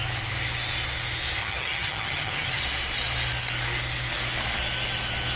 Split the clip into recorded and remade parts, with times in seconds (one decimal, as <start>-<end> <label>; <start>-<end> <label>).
0.0-1.4 recorded; 1.4-2.6 remade; 2.6-5.4 recorded